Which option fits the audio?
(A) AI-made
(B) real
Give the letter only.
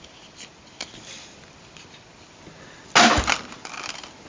B